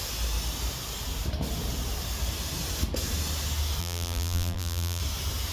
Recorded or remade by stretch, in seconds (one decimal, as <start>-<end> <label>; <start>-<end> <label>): 0.0-3.8 recorded; 3.8-5.0 remade; 5.0-5.5 recorded